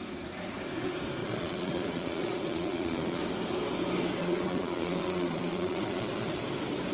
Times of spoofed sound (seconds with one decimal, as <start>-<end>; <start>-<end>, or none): 1.2-3.2; 4.2-6.4